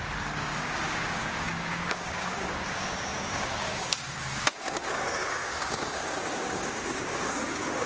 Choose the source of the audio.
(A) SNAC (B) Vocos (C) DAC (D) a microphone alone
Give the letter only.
C